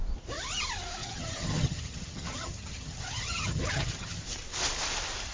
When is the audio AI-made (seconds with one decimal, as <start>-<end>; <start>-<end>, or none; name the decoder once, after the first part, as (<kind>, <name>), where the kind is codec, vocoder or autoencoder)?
1.0-4.2 (vocoder, HiFi-GAN)